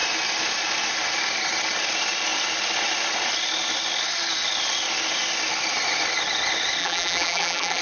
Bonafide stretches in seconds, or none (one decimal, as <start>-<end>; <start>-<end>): 0.0-6.8